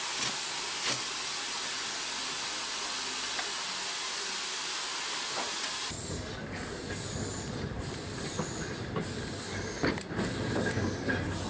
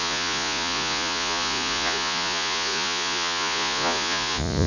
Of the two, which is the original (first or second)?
first